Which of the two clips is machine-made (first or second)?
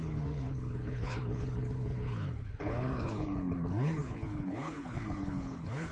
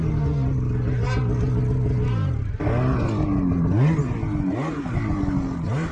first